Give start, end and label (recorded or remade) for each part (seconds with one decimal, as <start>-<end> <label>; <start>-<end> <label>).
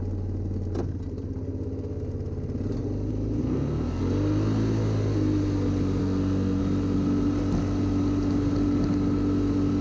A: 0.0-3.4 recorded; 3.4-4.0 remade; 4.0-6.0 recorded; 6.0-6.6 remade; 6.6-9.8 recorded